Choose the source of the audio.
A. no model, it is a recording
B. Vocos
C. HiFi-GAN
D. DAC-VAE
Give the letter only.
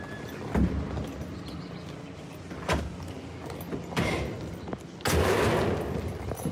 A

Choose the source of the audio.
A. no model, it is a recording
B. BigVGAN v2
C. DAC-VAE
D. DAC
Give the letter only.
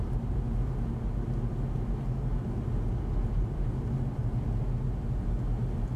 A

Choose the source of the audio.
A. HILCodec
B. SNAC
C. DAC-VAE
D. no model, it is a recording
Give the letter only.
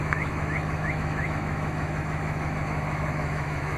C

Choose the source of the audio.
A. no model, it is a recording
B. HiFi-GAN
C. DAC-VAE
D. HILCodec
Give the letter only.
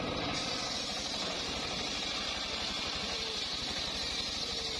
A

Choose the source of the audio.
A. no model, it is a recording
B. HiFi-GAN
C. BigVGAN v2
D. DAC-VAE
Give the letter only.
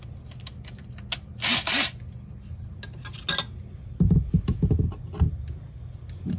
A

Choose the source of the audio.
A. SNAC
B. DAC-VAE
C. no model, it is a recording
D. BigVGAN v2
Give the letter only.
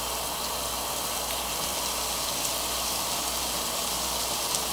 C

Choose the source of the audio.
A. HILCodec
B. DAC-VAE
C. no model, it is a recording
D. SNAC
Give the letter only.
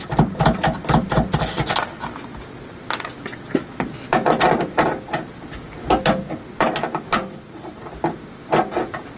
C